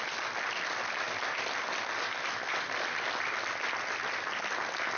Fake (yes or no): no